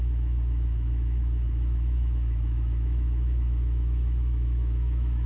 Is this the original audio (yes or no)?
no